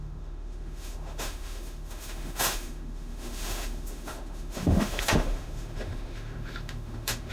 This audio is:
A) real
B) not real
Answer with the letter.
B